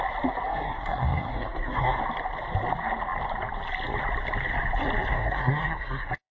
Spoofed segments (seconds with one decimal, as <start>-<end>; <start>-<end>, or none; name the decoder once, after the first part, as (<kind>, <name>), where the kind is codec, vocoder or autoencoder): 0.5-2.0 (codec, SNAC); 5.1-6.3